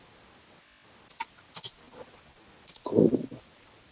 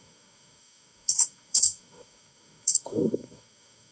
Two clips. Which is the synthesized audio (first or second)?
second